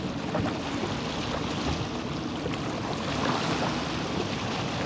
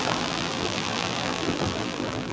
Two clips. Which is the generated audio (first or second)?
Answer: second